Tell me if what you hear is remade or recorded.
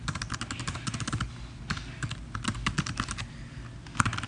recorded